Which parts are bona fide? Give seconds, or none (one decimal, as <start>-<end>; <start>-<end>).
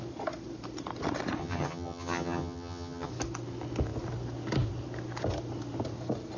0.0-1.4; 3.1-6.4